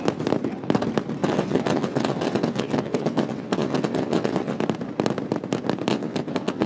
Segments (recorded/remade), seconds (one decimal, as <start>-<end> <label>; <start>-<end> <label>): 0.0-1.2 recorded; 1.2-4.6 remade; 4.6-5.9 recorded; 5.9-6.7 remade